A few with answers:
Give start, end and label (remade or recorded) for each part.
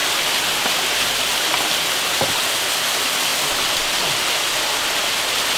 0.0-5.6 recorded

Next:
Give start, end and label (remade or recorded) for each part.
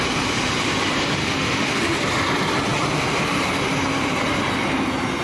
0.0-1.2 recorded; 1.2-1.8 remade; 1.8-5.2 recorded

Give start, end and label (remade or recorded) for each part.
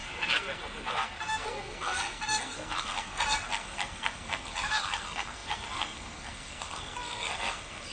0.0-7.9 remade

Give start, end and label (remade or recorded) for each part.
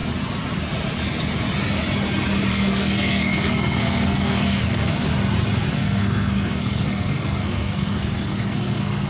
0.0-2.5 recorded; 2.5-5.1 remade; 5.1-5.7 recorded; 5.7-9.1 remade